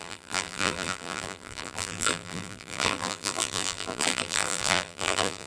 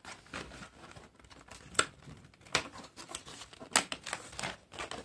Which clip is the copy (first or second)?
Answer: first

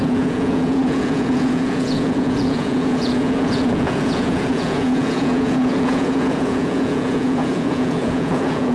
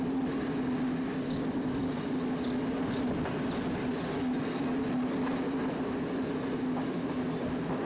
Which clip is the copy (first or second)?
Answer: first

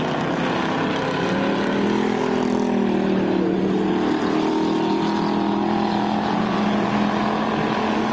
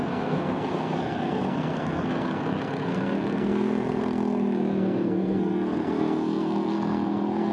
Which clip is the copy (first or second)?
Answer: second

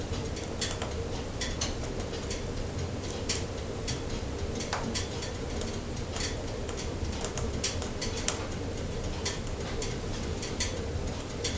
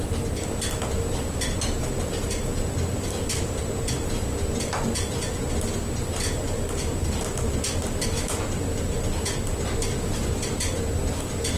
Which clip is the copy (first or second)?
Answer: first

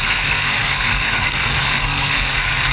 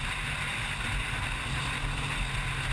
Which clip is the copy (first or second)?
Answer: first